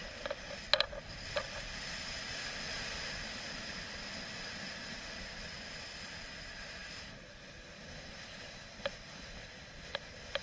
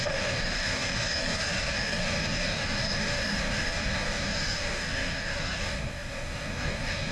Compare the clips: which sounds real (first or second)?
first